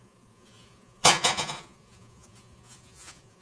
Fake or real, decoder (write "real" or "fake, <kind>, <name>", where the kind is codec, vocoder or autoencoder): fake, vocoder, Vocos